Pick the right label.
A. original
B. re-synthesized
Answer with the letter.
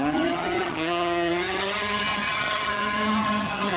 B